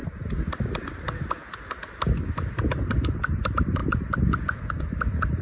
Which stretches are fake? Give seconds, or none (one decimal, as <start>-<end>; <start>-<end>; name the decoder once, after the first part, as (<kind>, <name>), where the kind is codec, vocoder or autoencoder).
none